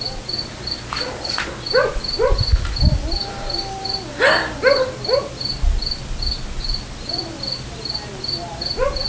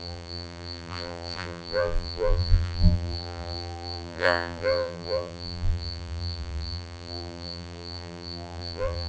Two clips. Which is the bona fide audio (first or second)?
first